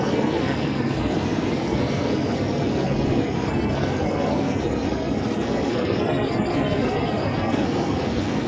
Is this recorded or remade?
remade